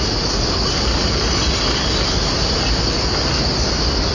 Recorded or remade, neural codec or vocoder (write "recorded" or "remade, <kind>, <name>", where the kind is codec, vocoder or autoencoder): recorded